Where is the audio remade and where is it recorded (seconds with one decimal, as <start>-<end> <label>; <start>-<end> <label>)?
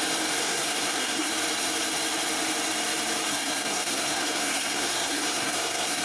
0.0-0.4 recorded; 0.4-1.3 remade; 1.3-3.3 recorded; 3.3-6.0 remade